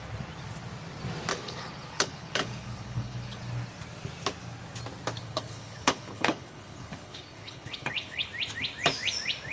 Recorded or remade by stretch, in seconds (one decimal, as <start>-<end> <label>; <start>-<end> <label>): 0.0-1.3 recorded; 1.3-3.4 remade; 3.4-5.2 recorded; 5.2-8.3 remade; 8.3-9.5 recorded